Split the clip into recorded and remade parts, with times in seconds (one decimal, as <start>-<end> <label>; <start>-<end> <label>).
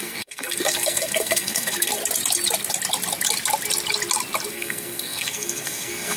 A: 0.0-2.0 remade; 2.0-4.5 recorded; 4.5-6.2 remade